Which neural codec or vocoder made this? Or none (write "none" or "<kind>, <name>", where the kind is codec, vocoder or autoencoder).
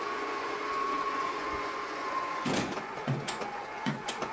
vocoder, Vocos